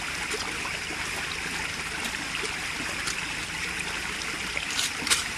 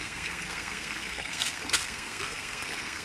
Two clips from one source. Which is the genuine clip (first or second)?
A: first